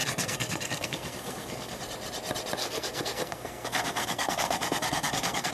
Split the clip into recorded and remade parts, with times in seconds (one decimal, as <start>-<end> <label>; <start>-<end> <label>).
0.0-1.8 remade; 1.8-2.6 recorded; 2.6-5.5 remade